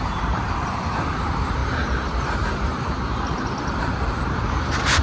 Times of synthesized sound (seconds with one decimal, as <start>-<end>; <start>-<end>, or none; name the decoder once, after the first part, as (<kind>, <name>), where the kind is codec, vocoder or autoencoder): 0.0-5.0 (vocoder, BigVGAN v2)